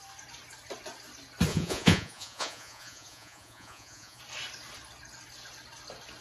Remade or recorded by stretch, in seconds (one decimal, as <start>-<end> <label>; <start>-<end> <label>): 0.0-1.5 recorded; 1.5-4.2 remade; 4.2-6.2 recorded